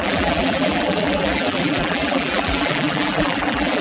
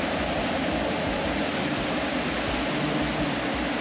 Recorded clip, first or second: second